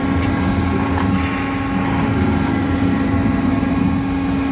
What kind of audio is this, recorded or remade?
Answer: recorded